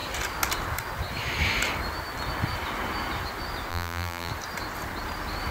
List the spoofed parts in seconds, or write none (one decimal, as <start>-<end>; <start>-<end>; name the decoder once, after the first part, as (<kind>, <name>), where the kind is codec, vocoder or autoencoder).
3.7-4.3 (vocoder, BigVGAN v2)